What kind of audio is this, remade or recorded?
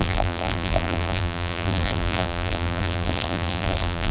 remade